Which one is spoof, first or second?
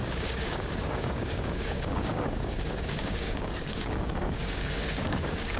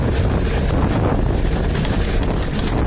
first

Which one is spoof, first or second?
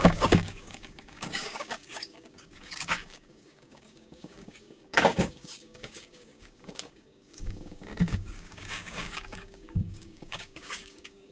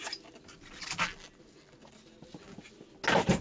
first